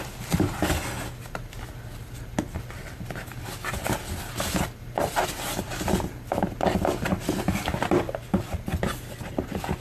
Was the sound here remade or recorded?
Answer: recorded